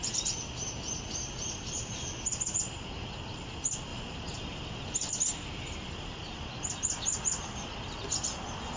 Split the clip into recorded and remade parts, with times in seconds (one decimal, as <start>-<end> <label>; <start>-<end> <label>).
0.0-8.8 recorded